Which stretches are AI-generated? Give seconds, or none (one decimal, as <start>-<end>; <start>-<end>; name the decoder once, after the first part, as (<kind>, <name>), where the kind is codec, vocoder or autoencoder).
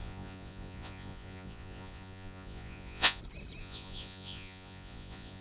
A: 0.0-3.2 (vocoder, Vocos); 3.6-5.4